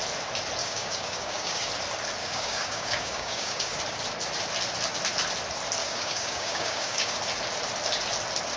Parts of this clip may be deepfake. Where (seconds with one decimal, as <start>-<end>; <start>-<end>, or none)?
0.6-1.7; 2.2-3.8; 5.8-7.2